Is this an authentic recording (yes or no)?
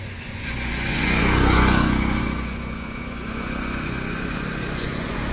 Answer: no